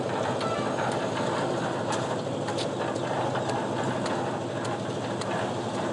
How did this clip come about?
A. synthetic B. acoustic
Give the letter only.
B